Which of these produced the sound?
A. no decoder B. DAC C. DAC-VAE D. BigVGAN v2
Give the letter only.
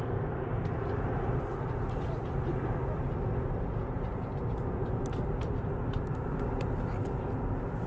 A